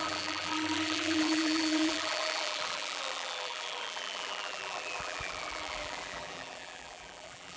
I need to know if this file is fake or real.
fake